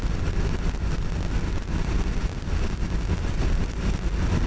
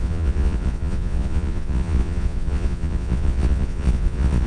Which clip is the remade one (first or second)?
second